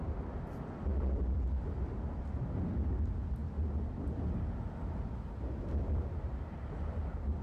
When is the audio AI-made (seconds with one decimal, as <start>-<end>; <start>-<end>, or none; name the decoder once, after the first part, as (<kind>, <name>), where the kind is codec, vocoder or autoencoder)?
none